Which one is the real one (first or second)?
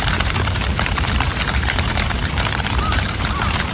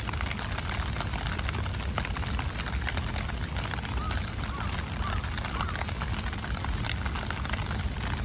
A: second